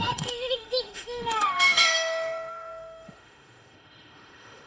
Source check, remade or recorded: remade